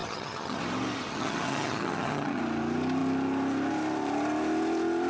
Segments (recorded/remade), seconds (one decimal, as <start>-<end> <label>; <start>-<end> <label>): 0.0-0.6 remade; 0.6-1.1 recorded; 1.1-2.4 remade; 2.4-5.1 recorded